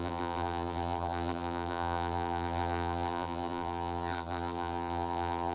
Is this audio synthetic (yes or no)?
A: yes